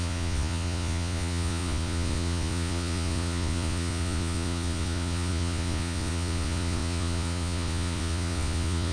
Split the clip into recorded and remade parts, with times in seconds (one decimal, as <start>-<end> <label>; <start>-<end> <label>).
0.0-8.9 remade